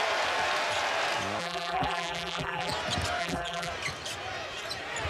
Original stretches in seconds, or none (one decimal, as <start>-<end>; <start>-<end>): 0.0-1.4; 2.7-3.2; 3.7-5.1